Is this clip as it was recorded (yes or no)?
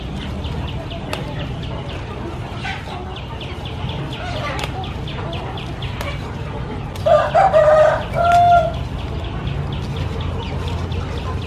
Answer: yes